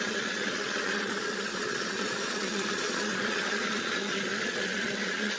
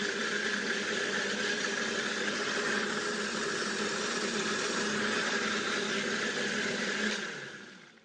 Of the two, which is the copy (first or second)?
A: first